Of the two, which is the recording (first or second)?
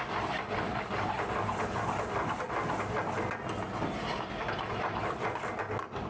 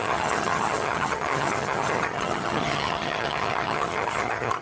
first